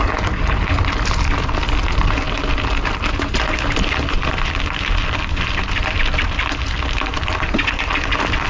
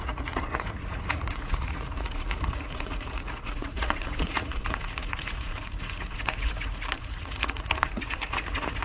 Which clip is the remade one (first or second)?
second